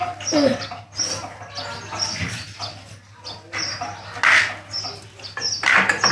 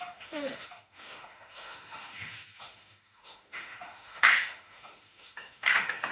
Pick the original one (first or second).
first